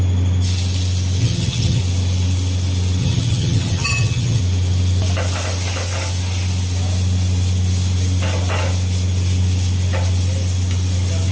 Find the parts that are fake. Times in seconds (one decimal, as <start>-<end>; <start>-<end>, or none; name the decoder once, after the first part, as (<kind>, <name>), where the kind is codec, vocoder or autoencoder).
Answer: 1.2-1.8 (vocoder, HiFi-GAN); 3.0-4.4